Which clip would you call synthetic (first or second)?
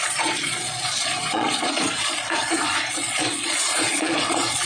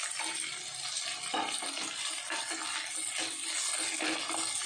first